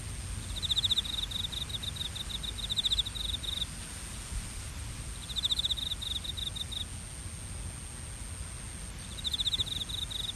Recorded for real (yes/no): yes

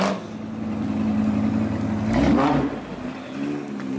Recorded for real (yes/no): yes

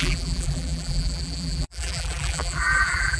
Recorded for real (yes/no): no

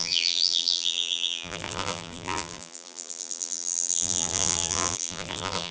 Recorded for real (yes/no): no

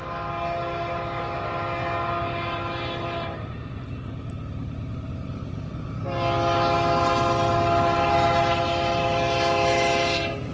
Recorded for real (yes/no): yes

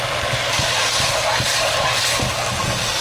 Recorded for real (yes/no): yes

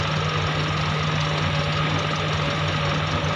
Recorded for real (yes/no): yes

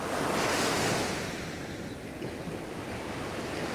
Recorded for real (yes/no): yes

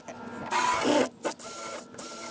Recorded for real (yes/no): yes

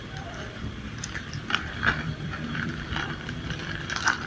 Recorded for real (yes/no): no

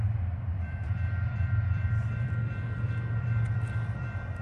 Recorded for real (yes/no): no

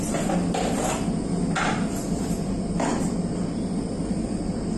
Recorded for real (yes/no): yes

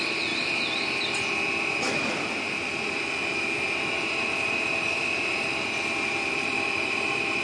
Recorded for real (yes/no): no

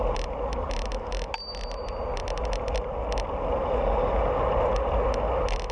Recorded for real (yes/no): yes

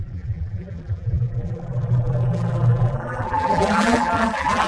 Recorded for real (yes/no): no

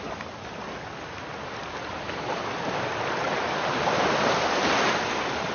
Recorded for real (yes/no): yes